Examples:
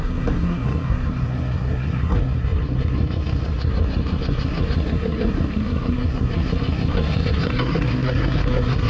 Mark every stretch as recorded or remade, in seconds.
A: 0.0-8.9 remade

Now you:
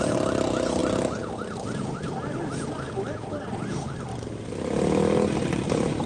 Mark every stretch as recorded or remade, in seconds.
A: 0.0-6.1 recorded